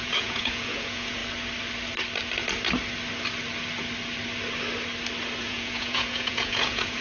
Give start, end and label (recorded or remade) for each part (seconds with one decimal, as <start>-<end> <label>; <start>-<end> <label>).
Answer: 0.0-1.2 remade; 1.2-5.4 recorded; 5.4-7.0 remade